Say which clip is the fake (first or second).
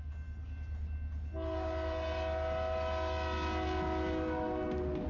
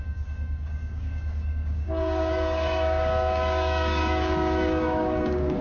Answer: second